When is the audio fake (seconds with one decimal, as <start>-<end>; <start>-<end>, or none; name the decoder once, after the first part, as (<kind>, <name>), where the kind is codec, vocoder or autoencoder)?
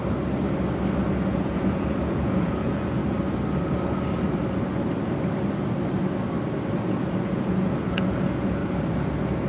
1.3-3.0 (vocoder, Vocos); 6.8-8.6